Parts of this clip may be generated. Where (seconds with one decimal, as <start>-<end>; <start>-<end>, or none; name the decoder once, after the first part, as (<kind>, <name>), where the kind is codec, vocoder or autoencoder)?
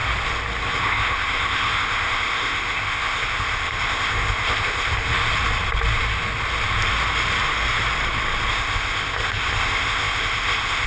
0.8-5.1 (codec, ZipCodec); 8.5-10.9